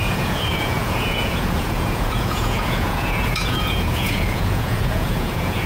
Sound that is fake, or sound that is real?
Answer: fake